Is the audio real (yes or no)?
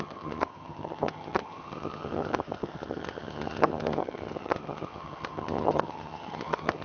no